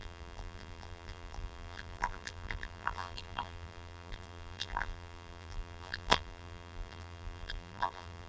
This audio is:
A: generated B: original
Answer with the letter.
A